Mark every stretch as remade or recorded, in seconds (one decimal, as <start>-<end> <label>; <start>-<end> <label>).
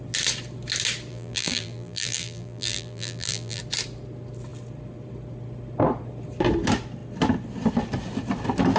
0.0-1.1 recorded; 1.1-3.6 remade; 3.6-8.8 recorded